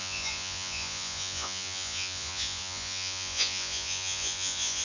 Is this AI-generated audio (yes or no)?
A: yes